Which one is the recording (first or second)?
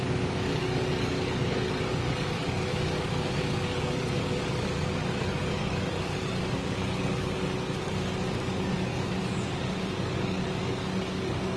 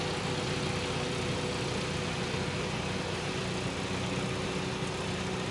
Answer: second